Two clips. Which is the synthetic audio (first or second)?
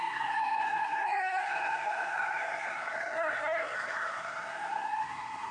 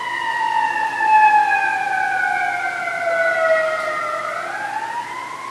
first